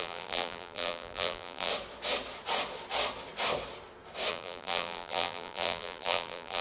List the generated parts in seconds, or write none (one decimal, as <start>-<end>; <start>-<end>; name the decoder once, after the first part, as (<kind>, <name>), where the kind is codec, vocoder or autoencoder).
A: 0.0-1.7 (vocoder, BigVGAN v2); 4.3-6.6